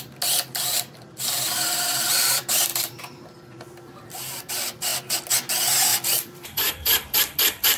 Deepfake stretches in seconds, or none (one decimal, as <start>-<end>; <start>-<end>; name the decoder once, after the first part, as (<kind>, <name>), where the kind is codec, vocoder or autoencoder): 2.7-4.5 (vocoder, BigVGAN v2); 5.9-7.8